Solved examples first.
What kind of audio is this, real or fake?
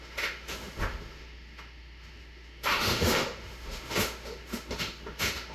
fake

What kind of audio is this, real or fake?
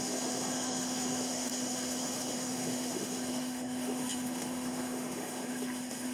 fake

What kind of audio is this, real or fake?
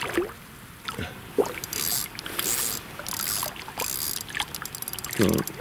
real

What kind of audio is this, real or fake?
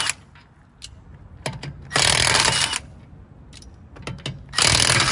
real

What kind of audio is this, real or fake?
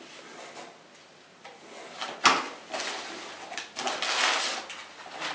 real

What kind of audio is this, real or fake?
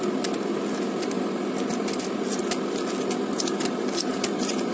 real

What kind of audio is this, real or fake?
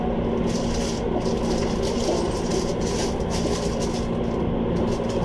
real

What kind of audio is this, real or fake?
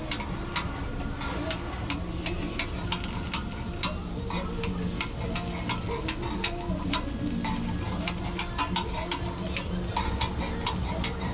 real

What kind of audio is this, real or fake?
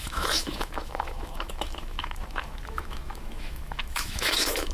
fake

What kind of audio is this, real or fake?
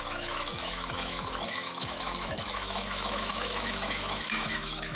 fake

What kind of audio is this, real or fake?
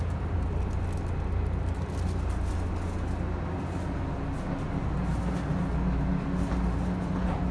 real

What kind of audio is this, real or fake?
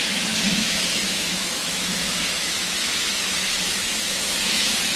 fake